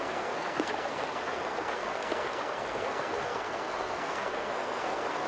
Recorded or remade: remade